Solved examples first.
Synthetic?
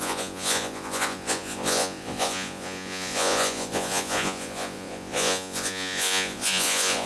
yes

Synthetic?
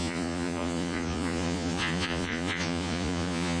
yes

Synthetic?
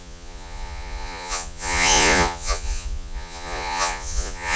yes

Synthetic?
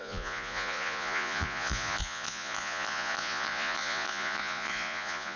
yes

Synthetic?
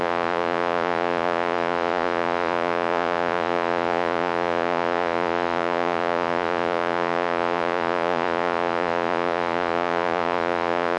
yes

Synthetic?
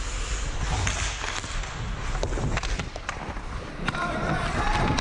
no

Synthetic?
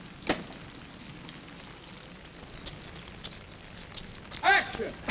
no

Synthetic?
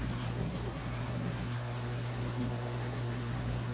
yes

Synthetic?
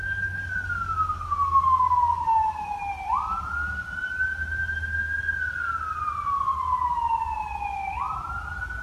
no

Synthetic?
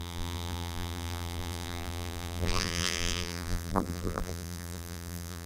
yes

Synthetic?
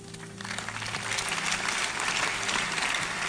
no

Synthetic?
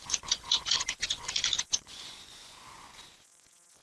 yes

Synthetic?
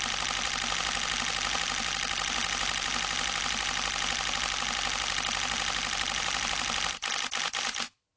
no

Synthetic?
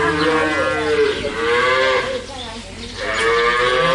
no